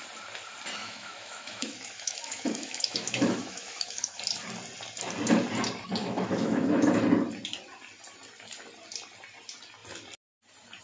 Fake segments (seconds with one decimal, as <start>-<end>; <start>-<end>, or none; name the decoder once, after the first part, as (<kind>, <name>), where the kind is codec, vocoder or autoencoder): 0.8-4.2 (autoencoder, DAC-VAE); 6.0-7.0